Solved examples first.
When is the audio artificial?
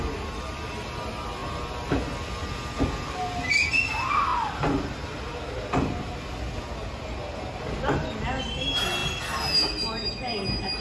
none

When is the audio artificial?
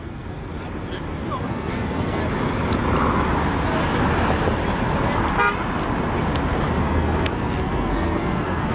0.0-0.5; 1.4-2.2; 6.8-8.7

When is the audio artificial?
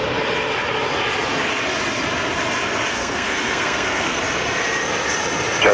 2.9-4.2